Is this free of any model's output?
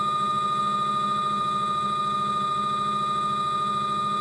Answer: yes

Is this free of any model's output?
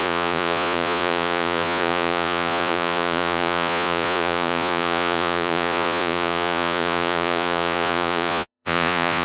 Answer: no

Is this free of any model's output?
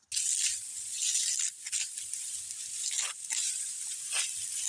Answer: yes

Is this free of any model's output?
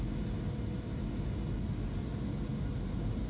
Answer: yes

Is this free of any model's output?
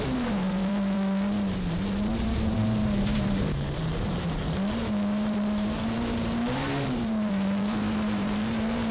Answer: no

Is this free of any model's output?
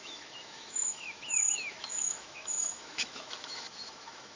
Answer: no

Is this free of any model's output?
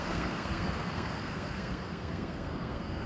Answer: no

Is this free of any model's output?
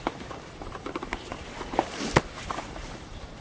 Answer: yes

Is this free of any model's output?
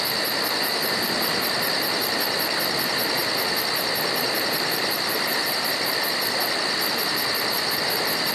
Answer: yes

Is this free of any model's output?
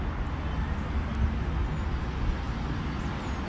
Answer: yes